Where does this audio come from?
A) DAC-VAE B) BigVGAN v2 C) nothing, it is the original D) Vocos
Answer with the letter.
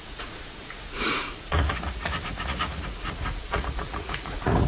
D